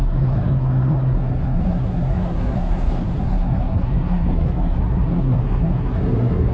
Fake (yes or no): yes